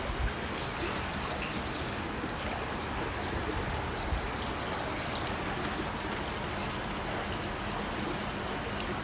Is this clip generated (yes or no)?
no